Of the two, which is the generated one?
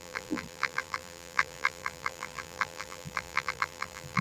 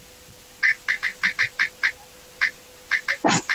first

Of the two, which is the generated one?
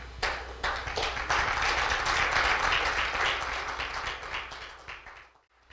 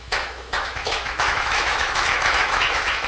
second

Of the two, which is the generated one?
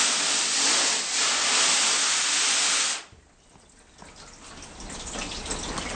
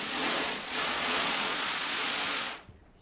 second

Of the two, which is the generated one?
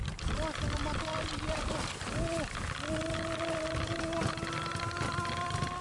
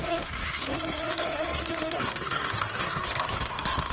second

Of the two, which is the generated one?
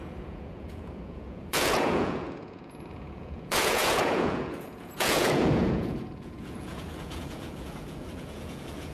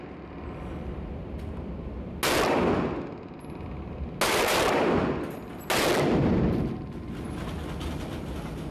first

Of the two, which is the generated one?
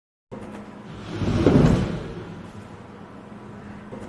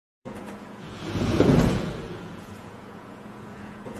second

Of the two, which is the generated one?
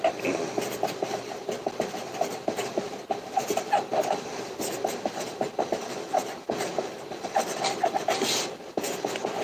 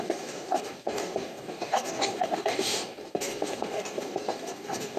second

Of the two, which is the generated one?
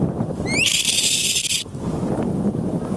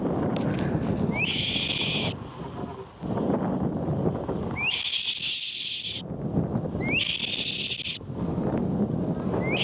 first